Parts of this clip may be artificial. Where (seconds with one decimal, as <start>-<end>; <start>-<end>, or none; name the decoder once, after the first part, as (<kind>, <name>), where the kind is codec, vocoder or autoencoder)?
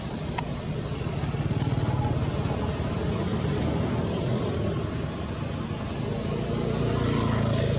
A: none